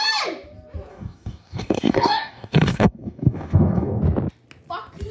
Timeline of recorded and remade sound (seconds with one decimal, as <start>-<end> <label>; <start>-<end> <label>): 0.0-0.9 recorded; 0.9-4.0 remade; 4.0-5.1 recorded